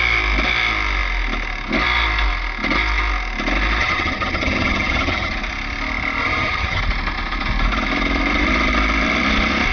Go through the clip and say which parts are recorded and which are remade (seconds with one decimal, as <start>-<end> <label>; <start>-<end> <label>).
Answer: 0.0-3.8 recorded; 3.8-5.3 remade; 5.3-6.2 recorded; 6.2-6.8 remade; 6.8-9.7 recorded

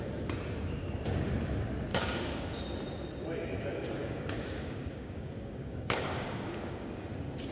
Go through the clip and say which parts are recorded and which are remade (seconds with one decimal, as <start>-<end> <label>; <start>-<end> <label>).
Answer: 0.0-1.9 recorded; 1.9-2.6 remade; 2.6-4.0 recorded; 4.0-7.1 remade; 7.1-7.5 recorded

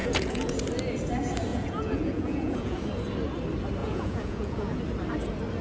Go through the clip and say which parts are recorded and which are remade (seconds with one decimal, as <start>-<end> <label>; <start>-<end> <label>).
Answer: 0.0-0.6 remade; 0.6-1.5 recorded; 1.5-2.8 remade; 2.8-3.8 recorded; 3.8-4.8 remade; 4.8-5.6 recorded

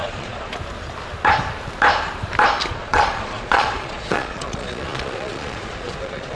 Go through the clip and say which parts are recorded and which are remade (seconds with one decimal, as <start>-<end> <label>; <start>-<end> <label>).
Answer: 0.0-0.5 remade; 0.5-2.7 recorded; 2.7-6.4 remade